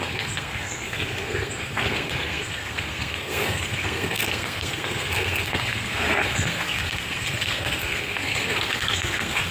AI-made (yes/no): yes